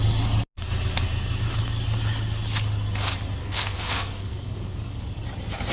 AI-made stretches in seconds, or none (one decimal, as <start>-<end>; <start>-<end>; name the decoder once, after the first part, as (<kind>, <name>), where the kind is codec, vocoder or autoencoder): 3.4-5.0 (codec, SNAC)